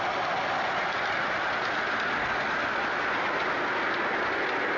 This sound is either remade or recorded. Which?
recorded